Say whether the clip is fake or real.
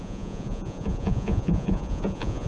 fake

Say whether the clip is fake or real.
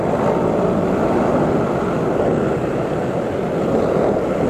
real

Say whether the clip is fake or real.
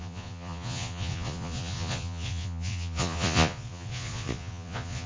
fake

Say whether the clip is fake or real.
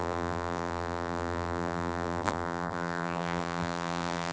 fake